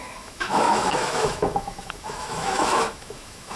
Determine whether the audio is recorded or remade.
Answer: remade